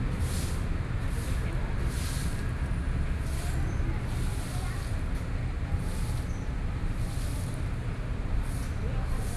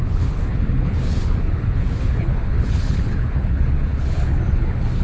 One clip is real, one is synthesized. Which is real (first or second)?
first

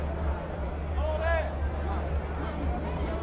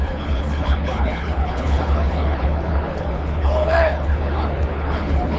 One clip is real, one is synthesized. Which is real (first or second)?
first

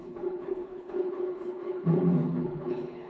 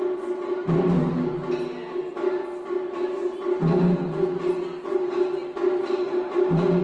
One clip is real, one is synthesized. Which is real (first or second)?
second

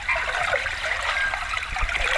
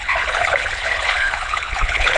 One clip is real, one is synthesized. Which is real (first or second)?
first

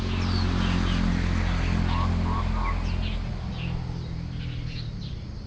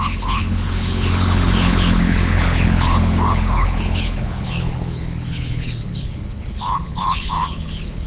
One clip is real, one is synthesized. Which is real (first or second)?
first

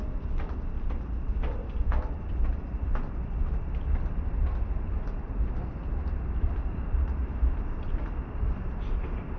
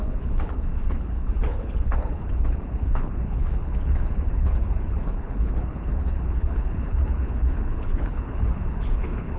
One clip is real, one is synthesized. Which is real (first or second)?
first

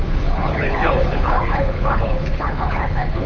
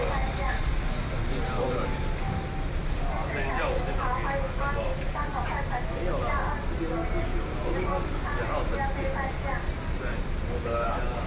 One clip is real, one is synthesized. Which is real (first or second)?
second